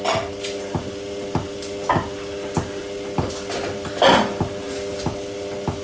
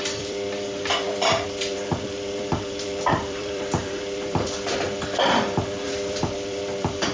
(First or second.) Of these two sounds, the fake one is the second